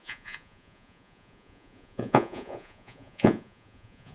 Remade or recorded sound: remade